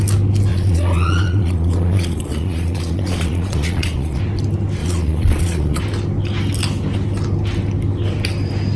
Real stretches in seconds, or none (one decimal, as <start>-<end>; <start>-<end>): 0.0-0.5; 4.2-4.8; 5.8-8.8